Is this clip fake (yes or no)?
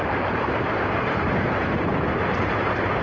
yes